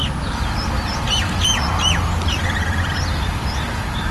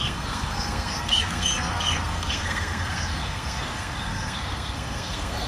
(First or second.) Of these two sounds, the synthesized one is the second